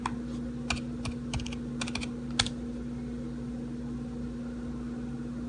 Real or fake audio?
real